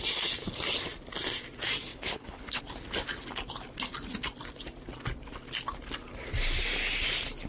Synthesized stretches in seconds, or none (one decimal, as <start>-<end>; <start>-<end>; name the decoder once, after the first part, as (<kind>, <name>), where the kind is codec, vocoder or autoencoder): 1.9-2.6 (codec, HILCodec)